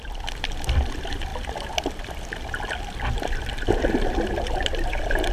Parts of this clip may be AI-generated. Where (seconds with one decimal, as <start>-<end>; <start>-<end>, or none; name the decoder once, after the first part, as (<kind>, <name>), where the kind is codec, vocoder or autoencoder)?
0.0-5.3 (vocoder, BigVGAN v2)